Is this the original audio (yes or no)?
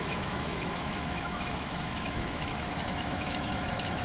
no